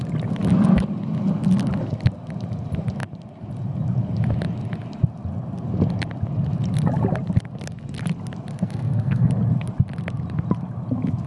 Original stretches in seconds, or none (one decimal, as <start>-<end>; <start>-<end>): 0.0-8.5; 9.3-11.3